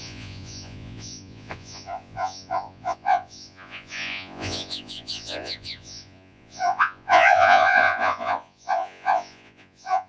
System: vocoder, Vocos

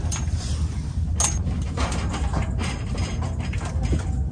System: none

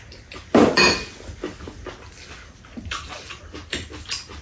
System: none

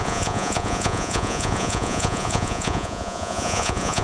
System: vocoder, Vocos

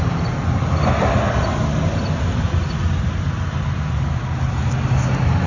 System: none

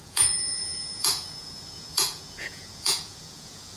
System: vocoder, Vocos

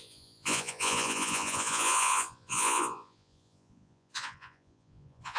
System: vocoder, Vocos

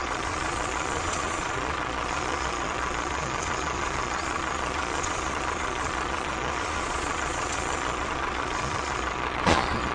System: vocoder, Vocos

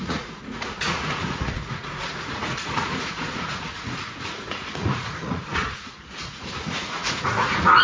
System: vocoder, Vocos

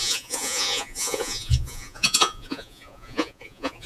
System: vocoder, Vocos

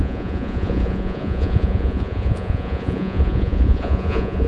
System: vocoder, Vocos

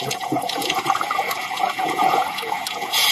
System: vocoder, Vocos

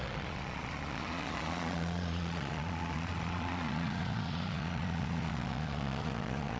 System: vocoder, Vocos